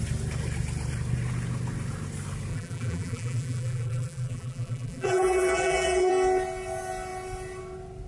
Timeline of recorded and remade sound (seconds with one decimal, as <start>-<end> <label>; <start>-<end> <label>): 0.0-2.5 recorded; 2.5-6.1 remade; 6.1-8.1 recorded